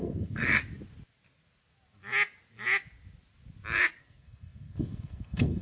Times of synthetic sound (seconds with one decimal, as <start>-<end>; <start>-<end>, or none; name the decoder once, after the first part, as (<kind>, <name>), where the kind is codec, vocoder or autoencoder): 0.0-0.6 (codec, SNAC); 4.0-5.6